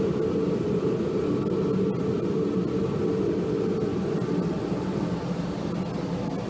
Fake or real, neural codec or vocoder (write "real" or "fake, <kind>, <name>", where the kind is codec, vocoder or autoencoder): real